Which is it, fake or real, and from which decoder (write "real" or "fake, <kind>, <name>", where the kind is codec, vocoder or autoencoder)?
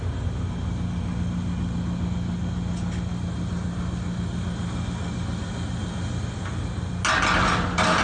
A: real